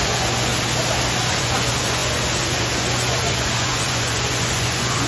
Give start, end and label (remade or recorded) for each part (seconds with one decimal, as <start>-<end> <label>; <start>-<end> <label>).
0.0-0.5 remade; 0.5-1.3 recorded; 1.3-5.1 remade